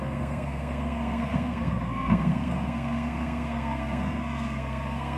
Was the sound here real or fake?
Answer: fake